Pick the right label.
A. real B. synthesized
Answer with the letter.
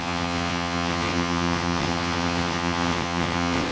B